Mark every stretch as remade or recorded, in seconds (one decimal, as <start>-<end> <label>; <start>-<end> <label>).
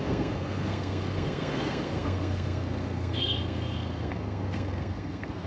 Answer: 0.0-5.5 remade